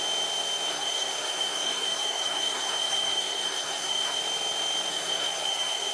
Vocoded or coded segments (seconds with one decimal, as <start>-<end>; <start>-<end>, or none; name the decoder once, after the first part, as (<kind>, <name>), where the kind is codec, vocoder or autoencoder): 0.7-4.2 (codec, SNAC); 4.9-5.9